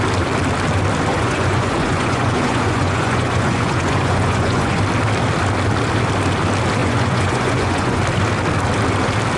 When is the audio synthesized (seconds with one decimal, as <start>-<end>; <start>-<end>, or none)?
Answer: 1.1-4.8; 6.8-8.0